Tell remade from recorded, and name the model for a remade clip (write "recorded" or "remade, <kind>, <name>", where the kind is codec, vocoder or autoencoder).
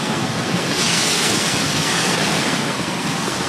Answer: remade, codec, SNAC